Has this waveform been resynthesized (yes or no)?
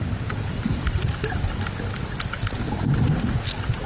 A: no